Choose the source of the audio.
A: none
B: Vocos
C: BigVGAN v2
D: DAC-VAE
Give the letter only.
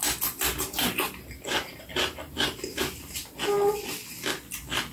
A